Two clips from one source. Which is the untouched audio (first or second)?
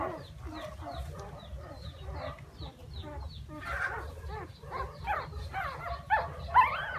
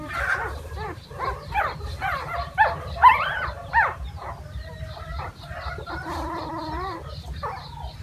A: first